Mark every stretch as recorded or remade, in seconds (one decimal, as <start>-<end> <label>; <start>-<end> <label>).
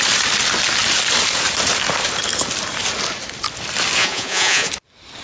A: 0.0-4.0 recorded; 4.0-4.7 remade; 4.7-5.2 recorded